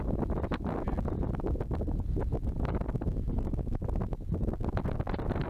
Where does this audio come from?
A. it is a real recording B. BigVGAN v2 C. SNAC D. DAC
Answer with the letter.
A